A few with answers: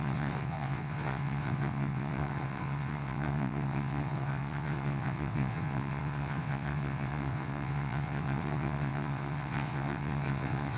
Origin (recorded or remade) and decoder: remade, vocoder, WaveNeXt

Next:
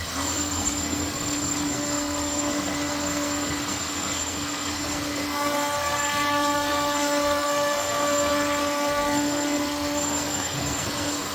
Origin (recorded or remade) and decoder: remade, codec, SNAC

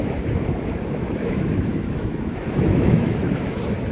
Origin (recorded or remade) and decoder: remade, autoencoder, DAC-VAE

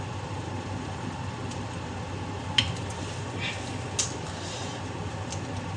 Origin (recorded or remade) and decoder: recorded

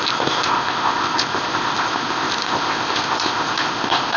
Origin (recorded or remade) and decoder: remade, codec, ZipCodec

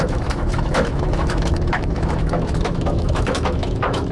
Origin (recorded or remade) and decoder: remade, autoencoder, DAC-VAE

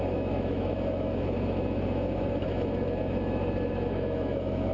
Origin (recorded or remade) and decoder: remade, autoencoder, DAC-VAE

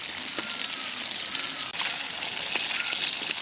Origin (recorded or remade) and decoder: recorded